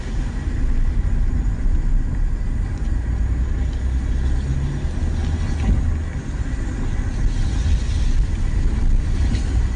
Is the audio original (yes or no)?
yes